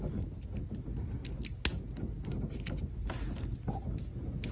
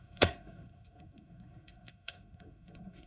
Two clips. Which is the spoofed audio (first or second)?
second